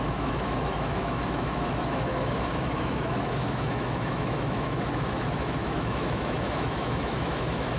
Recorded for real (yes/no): no